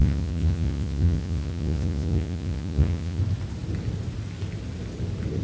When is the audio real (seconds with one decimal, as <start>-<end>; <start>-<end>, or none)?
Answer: 3.2-5.4